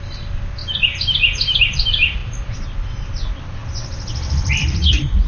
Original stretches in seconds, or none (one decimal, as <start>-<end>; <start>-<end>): 0.6-1.6; 3.6-4.3